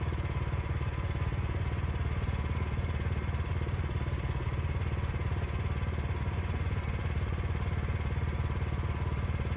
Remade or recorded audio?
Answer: remade